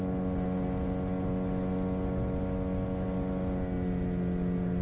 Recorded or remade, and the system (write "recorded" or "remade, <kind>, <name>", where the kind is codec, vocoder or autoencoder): recorded